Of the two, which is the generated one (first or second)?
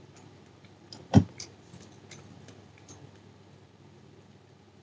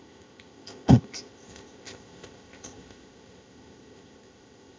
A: second